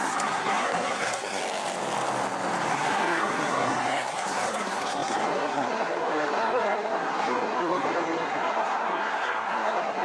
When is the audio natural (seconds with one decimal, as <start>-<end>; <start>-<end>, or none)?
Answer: 1.4-2.7